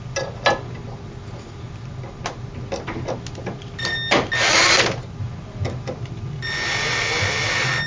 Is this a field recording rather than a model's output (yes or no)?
yes